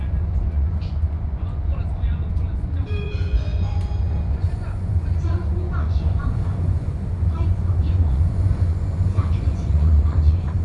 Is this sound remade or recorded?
remade